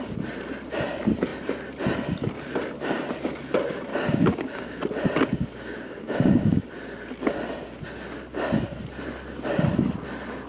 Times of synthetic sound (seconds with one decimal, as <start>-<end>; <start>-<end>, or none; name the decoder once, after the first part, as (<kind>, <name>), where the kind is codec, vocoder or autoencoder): 3.9-4.8 (codec, DAC); 5.3-6.7